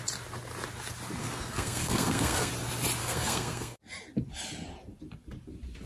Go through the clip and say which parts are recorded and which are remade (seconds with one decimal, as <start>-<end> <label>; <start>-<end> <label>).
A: 0.0-1.2 recorded; 1.2-2.5 remade; 2.5-3.0 recorded; 3.0-3.8 remade; 3.8-5.9 recorded

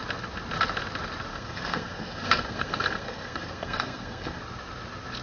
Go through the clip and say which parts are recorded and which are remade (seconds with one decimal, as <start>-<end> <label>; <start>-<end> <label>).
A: 0.0-1.3 recorded; 1.3-4.4 remade; 4.4-5.2 recorded

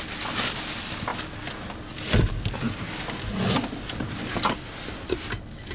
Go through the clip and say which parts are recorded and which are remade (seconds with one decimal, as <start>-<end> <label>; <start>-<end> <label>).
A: 0.0-5.7 recorded

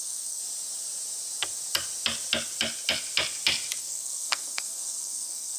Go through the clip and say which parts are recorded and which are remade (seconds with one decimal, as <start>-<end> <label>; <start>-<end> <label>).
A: 0.0-0.4 remade; 0.4-3.8 recorded; 3.8-5.6 remade

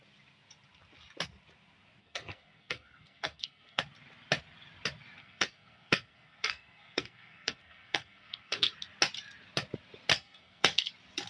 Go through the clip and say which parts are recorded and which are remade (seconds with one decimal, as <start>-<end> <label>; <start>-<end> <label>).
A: 0.0-2.0 recorded; 2.0-3.8 remade; 3.8-5.2 recorded; 5.2-8.7 remade; 8.7-10.1 recorded; 10.1-10.9 remade; 10.9-11.3 recorded

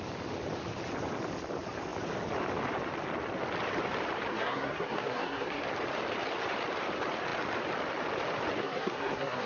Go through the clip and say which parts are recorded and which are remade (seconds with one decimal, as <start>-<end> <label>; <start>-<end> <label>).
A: 0.0-4.3 recorded; 4.3-5.6 remade; 5.6-8.6 recorded; 8.6-9.5 remade